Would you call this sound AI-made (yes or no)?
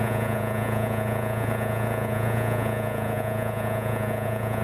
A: yes